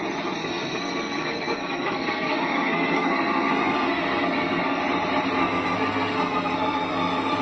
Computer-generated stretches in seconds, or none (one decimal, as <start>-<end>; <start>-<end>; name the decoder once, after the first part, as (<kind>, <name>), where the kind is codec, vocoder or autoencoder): 0.4-4.8 (codec, SNAC); 5.4-7.4